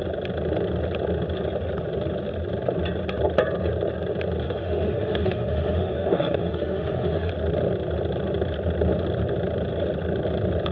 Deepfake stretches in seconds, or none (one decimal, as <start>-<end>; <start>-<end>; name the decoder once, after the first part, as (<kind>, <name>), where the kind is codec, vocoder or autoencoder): 4.4-7.3 (autoencoder, DAC-VAE)